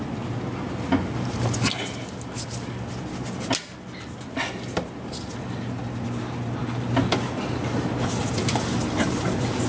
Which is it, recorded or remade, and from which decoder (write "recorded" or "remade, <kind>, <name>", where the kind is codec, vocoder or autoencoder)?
recorded